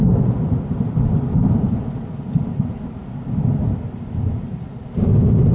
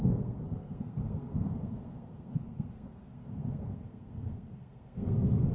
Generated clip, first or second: second